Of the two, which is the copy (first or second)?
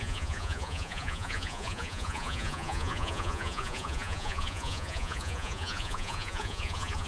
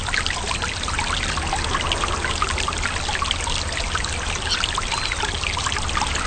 first